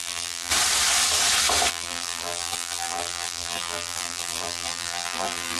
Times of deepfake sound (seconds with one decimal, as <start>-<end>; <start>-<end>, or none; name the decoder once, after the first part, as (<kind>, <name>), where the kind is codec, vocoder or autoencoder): 0.0-0.5 (vocoder, BigVGAN v2); 1.7-5.6